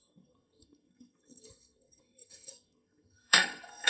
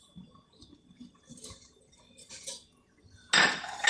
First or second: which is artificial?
first